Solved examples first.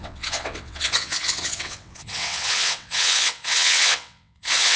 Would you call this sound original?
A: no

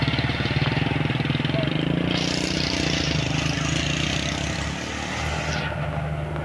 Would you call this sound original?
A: yes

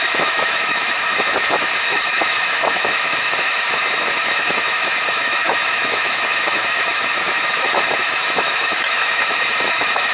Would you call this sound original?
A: no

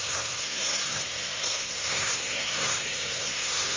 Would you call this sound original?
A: no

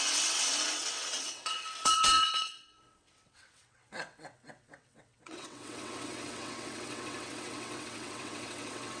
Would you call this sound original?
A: no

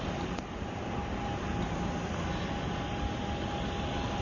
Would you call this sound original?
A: yes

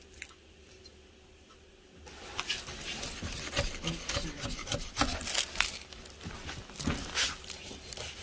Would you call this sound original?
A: yes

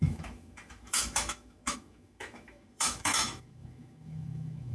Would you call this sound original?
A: no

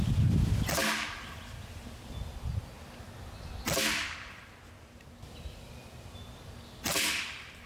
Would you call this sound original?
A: yes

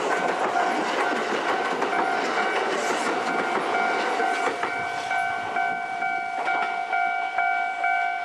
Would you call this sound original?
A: yes